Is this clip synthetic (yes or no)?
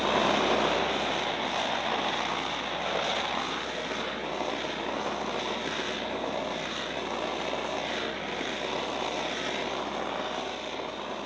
no